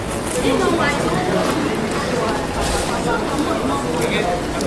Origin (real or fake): real